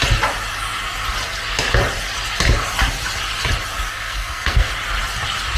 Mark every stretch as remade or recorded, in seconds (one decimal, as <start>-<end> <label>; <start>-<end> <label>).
0.0-3.9 recorded; 3.9-4.7 remade; 4.7-5.6 recorded